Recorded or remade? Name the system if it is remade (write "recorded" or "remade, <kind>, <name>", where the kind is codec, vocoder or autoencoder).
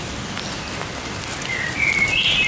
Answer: remade, vocoder, BigVGAN v2